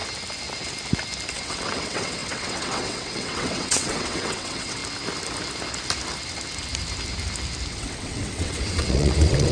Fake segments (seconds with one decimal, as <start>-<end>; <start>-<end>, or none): 1.3-4.8; 7.7-9.5